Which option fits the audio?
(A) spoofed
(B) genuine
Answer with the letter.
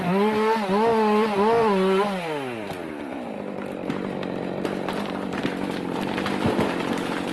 A